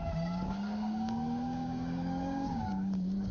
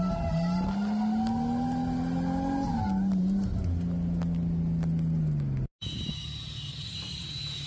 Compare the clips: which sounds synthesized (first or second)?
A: first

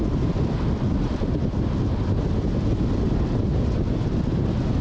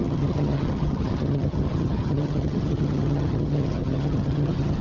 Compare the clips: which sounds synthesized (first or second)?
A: second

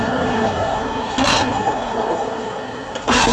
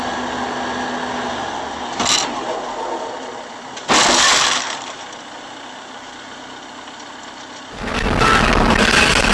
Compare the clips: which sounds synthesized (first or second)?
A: first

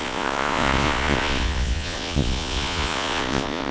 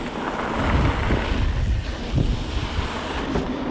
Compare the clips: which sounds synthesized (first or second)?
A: first